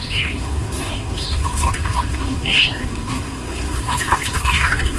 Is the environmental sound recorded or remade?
remade